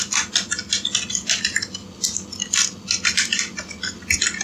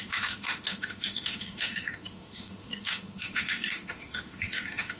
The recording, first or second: first